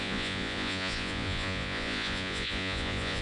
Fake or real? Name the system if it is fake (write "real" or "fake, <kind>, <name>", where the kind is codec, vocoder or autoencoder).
fake, vocoder, Vocos